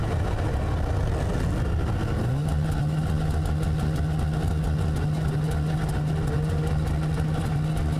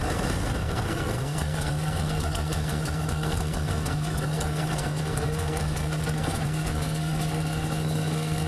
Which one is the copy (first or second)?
second